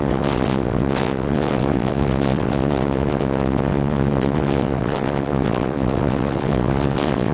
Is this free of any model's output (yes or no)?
no